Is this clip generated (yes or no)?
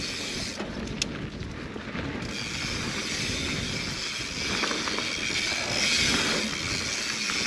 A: no